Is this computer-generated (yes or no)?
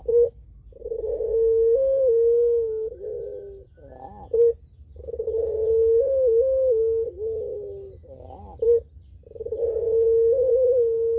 no